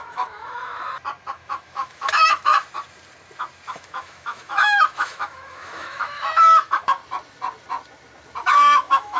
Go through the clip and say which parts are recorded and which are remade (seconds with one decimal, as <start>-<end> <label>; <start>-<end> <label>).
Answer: 0.0-0.7 remade; 0.7-1.3 recorded; 1.3-2.5 remade; 2.5-3.7 recorded; 3.7-7.0 remade; 7.0-8.4 recorded; 8.4-9.2 remade